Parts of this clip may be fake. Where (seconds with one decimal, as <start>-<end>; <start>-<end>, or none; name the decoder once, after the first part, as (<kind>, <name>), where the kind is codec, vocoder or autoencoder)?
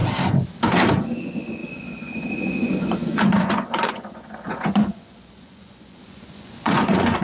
0.9-7.2 (vocoder, Vocos)